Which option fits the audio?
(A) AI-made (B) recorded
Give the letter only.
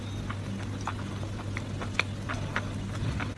B